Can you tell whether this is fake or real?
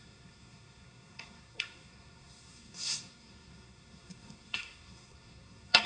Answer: fake